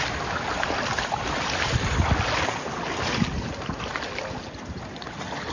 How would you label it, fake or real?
real